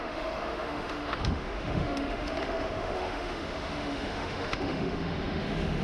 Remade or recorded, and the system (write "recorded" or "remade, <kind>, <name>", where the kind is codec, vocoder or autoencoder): remade, autoencoder, DAC-VAE